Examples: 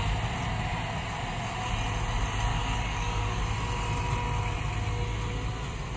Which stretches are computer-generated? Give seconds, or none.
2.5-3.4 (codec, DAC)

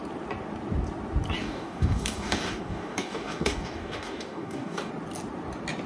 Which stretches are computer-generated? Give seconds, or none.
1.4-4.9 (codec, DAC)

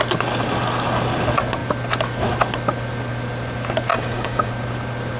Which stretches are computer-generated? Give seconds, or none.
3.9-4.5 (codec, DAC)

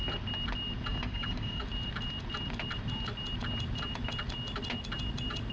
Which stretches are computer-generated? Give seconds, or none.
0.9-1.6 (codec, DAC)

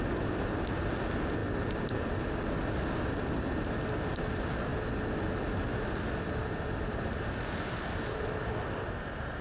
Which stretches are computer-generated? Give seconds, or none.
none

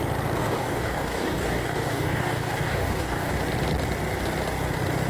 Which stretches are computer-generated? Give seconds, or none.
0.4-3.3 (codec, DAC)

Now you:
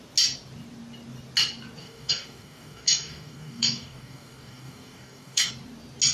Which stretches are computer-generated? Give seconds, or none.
1.8-5.5 (codec, DAC)

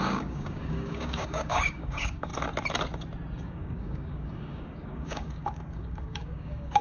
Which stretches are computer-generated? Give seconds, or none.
0.0-2.3 (codec, DAC); 3.4-6.8